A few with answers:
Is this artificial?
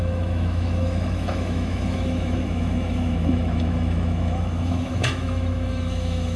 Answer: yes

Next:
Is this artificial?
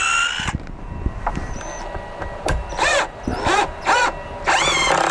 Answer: no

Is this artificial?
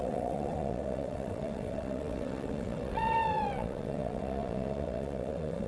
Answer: yes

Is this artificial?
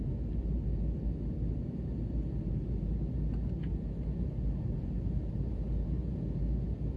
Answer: no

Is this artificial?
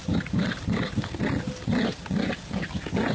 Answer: no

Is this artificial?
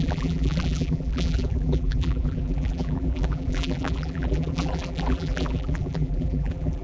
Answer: yes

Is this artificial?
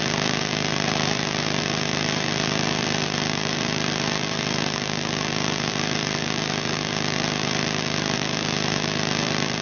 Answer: yes